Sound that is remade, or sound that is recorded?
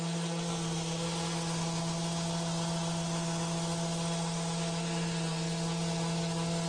recorded